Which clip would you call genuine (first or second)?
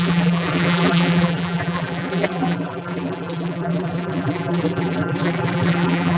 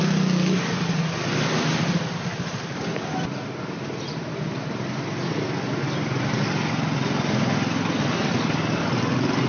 second